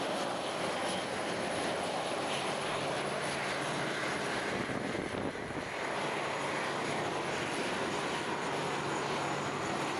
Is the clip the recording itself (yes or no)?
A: yes